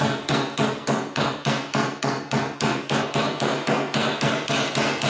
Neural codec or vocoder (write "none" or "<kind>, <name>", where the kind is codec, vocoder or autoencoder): codec, SNAC